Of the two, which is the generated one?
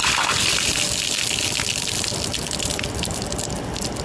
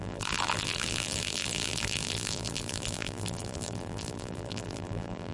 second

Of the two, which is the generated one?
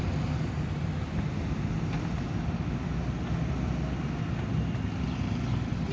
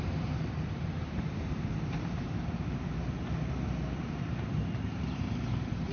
second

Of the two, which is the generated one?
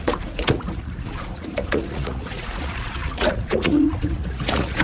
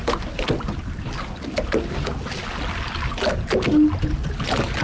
first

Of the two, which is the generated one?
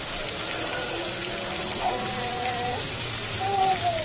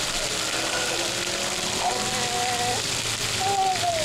first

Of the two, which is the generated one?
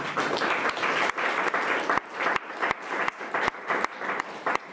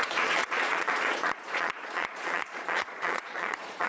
second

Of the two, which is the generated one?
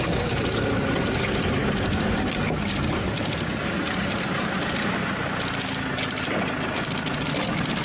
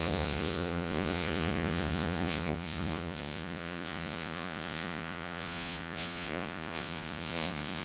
second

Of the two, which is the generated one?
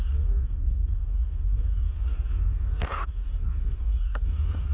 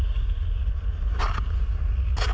first